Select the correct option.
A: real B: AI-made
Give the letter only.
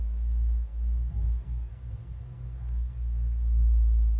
B